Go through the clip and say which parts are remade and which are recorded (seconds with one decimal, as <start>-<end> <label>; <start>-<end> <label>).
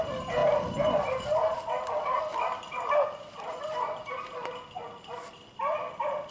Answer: 0.0-6.3 recorded